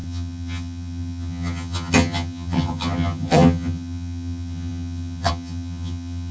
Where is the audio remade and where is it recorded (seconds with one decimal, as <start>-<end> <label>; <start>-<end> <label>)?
0.0-6.3 remade